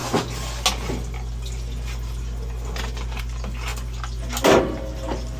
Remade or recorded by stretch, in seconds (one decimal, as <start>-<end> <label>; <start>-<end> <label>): 0.0-5.4 recorded